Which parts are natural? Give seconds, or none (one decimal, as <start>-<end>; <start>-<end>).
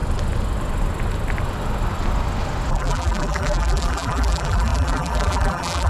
0.0-2.7